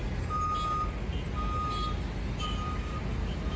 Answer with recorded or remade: recorded